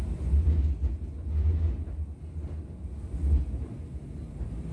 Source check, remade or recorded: recorded